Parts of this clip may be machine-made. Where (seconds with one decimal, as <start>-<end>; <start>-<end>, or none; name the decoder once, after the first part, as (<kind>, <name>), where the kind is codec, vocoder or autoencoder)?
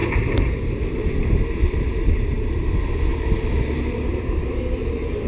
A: 0.0-3.1 (vocoder, BigVGAN v2); 4.1-5.3